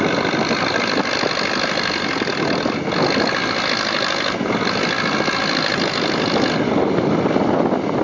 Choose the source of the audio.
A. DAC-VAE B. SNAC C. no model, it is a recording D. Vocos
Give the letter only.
C